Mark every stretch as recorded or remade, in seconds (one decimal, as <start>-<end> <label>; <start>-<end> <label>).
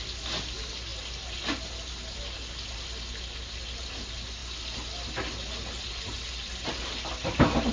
0.0-7.7 recorded